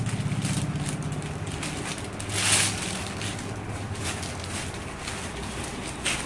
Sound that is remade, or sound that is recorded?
recorded